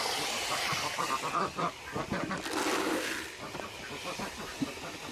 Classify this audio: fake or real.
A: real